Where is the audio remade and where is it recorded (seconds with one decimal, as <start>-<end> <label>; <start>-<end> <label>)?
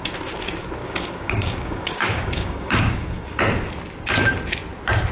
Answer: 0.0-0.8 recorded; 0.8-3.4 remade; 3.4-5.1 recorded